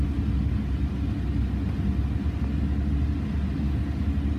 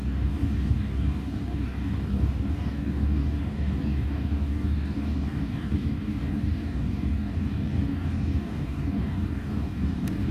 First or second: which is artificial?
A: second